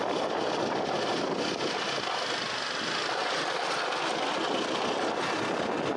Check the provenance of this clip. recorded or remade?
recorded